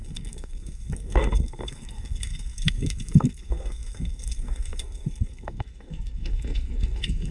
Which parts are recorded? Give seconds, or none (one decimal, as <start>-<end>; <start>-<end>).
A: none